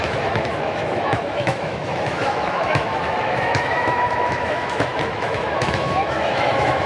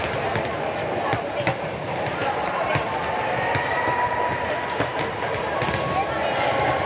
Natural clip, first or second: second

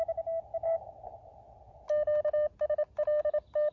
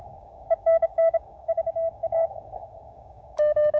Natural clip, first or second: first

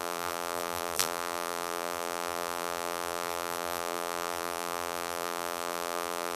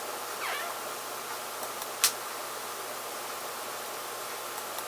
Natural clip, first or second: second